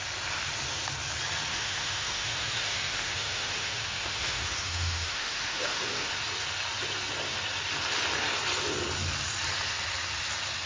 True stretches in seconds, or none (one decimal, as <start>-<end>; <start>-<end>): 0.0-1.5; 6.1-10.7

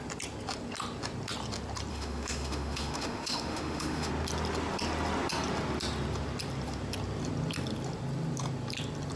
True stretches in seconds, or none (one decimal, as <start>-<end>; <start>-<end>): 0.0-1.9; 4.1-9.2

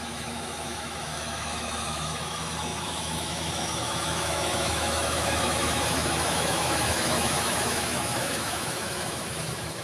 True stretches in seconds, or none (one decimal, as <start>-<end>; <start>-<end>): none

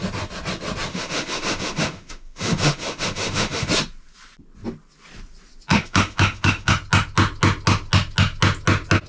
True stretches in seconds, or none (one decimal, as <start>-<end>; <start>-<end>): 0.0-0.9; 3.7-5.7; 6.7-9.1

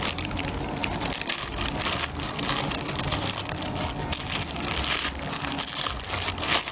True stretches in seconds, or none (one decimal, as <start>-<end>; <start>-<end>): 0.0-6.7

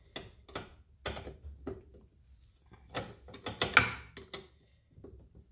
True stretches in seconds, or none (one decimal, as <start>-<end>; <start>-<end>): 0.0-5.5

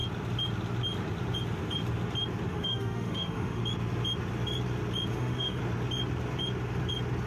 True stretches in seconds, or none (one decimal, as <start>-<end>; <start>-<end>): 0.0-2.5; 3.6-5.1; 5.6-7.3

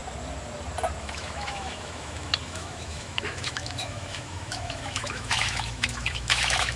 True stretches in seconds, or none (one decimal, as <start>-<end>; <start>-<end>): 0.0-1.0